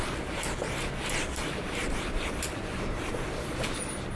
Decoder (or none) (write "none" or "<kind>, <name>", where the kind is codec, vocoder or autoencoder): vocoder, BigVGAN v2